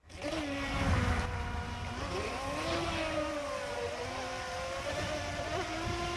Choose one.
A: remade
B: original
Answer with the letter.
B